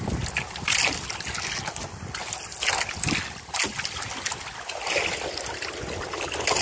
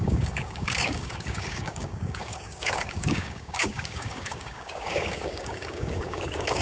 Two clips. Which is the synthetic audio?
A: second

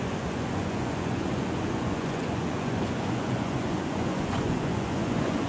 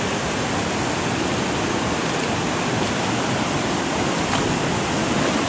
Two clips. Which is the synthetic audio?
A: first